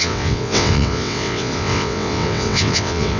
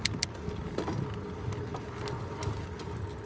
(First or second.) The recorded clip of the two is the second